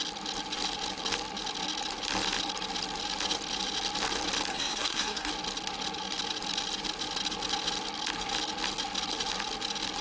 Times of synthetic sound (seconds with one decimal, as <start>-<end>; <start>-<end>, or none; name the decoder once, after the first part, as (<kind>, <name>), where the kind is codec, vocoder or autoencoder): 4.5-5.3 (codec, SNAC)